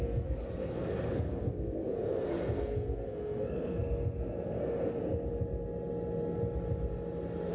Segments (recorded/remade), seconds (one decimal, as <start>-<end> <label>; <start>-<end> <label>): 0.0-5.0 remade; 5.0-7.5 recorded